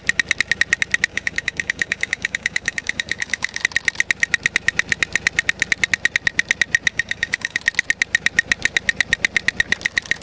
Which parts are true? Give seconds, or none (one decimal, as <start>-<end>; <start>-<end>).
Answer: 0.0-1.1; 3.6-6.9; 7.6-10.2

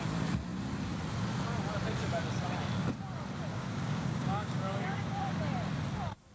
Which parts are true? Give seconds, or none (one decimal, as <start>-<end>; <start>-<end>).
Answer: 0.0-3.5; 5.2-6.3

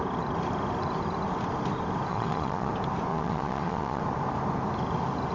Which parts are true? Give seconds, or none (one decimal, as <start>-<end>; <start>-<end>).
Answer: 0.0-2.1; 2.7-3.1; 4.0-5.3

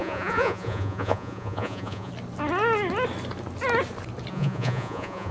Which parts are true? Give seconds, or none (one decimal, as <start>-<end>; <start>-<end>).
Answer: 2.1-4.3

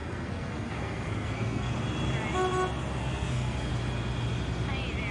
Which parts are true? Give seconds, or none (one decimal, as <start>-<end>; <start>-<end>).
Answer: 1.7-3.0; 3.7-5.1